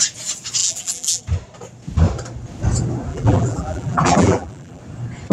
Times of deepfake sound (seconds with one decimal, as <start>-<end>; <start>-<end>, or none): 0.6-1.2; 3.1-4.8

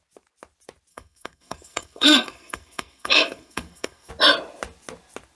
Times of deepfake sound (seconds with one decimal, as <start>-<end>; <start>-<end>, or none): 0.9-4.1

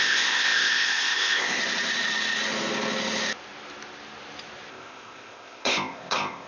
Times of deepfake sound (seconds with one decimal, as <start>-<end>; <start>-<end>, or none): 0.0-1.6; 4.7-6.5

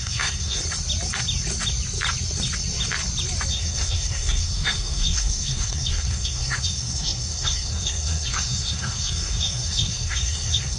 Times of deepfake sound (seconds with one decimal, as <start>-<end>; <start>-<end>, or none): 0.0-0.6; 3.5-10.8

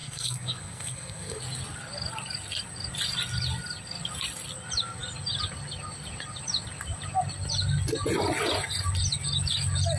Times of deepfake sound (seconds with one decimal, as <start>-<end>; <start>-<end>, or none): 0.0-1.4

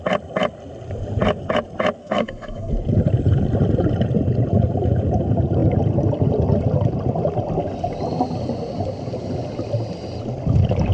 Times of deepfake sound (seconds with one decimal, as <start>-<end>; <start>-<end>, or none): 2.0-2.7

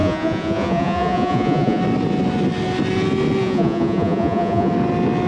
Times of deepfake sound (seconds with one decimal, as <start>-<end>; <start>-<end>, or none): 0.0-1.8; 3.4-4.7